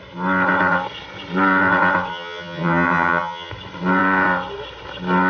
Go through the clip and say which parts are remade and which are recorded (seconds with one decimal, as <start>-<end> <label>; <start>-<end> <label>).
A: 0.0-2.1 recorded; 2.1-3.5 remade; 3.5-5.3 recorded